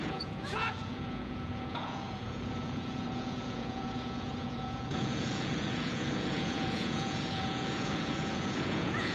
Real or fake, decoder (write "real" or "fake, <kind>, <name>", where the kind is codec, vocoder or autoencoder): fake, vocoder, Vocos